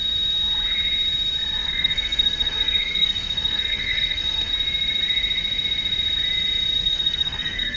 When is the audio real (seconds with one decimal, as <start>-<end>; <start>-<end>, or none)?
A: 0.0-1.6; 4.5-6.8